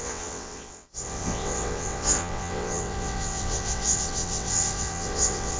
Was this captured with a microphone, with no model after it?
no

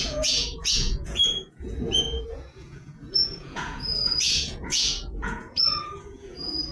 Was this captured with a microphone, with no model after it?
no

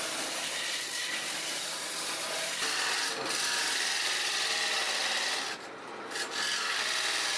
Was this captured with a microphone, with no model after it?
yes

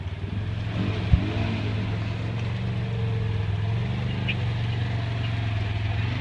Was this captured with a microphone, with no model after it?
yes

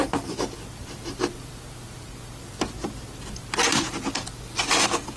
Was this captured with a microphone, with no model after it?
yes